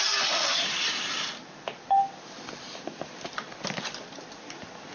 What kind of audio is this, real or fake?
fake